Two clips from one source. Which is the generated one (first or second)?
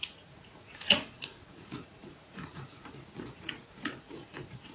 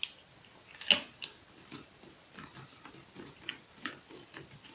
first